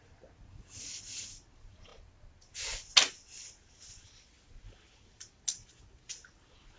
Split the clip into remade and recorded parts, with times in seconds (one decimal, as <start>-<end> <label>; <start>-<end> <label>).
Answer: 0.0-6.8 recorded